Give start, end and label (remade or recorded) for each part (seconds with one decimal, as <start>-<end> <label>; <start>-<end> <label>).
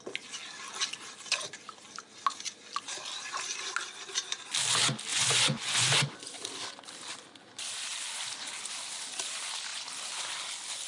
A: 0.0-5.1 recorded; 5.1-6.1 remade; 6.1-10.9 recorded